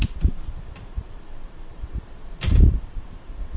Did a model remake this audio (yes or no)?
yes